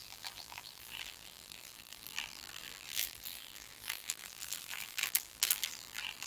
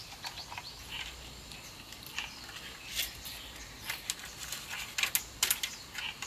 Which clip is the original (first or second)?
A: second